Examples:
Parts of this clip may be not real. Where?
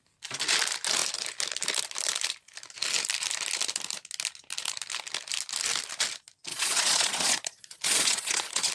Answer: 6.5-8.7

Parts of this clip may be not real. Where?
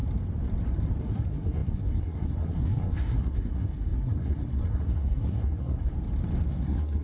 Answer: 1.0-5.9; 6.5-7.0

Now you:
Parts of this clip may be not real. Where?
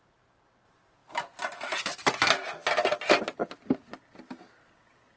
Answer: none